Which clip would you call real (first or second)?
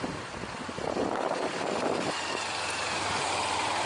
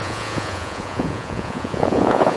first